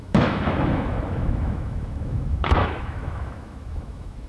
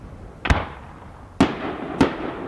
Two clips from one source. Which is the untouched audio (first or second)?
second